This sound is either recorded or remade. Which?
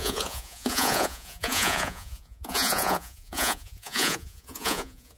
remade